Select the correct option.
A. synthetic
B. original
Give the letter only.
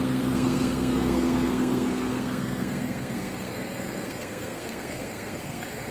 A